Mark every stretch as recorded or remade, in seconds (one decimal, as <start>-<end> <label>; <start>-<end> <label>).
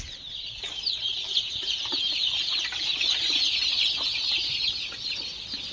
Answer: 0.0-5.7 recorded